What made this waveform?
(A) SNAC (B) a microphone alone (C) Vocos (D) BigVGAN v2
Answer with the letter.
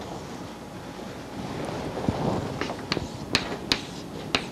B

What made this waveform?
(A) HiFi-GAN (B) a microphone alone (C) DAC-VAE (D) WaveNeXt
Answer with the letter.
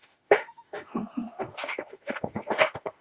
C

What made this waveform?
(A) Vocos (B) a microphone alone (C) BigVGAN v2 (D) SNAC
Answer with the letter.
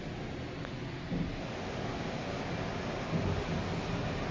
B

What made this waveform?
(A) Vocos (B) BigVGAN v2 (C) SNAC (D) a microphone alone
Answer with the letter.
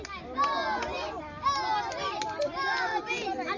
D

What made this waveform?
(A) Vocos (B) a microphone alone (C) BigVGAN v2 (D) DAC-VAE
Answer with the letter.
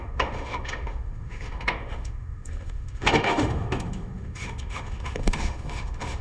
D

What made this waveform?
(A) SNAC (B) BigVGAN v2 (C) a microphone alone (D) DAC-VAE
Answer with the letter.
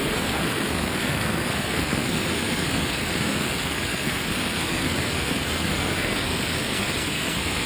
A